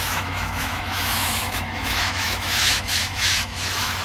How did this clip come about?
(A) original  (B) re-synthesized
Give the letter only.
B